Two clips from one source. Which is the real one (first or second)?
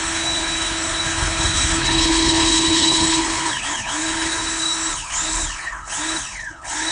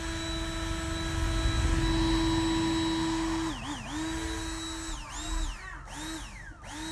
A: second